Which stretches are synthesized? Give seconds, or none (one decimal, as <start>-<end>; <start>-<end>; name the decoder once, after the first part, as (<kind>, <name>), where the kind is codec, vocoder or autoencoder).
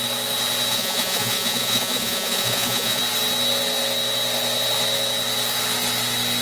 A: 0.7-3.0 (vocoder, Vocos)